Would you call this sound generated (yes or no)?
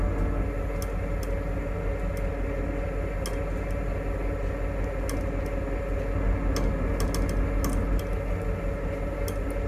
no